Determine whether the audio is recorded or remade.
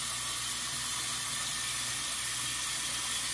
recorded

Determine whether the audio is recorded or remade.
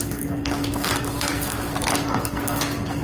remade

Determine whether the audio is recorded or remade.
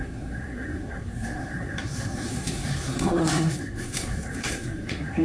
remade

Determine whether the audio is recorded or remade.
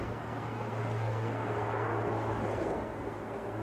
remade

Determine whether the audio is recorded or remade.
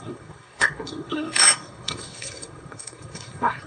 remade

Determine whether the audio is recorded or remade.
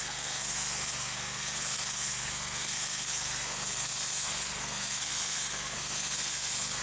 remade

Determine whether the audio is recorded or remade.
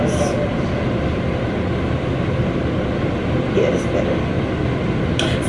recorded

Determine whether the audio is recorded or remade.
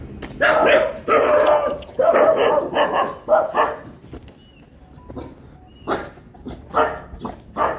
recorded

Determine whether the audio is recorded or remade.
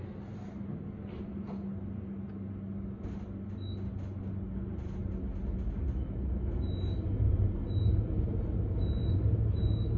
recorded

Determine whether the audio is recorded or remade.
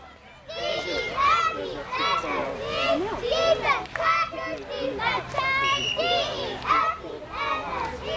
recorded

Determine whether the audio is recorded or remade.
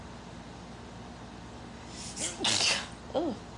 recorded